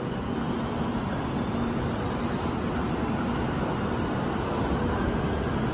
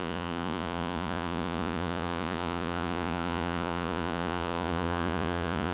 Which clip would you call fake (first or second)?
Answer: second